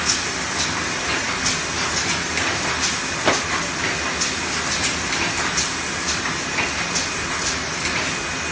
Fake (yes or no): no